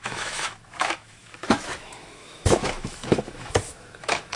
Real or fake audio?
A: fake